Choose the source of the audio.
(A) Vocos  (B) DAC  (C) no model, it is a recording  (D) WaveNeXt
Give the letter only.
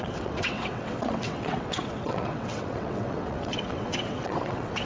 D